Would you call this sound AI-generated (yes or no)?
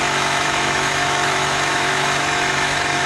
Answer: yes